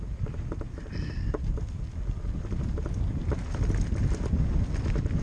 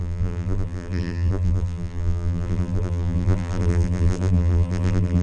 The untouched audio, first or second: first